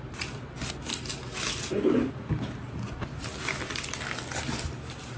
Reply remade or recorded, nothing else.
recorded